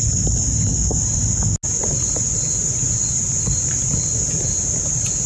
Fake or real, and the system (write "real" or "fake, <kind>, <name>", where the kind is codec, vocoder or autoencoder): real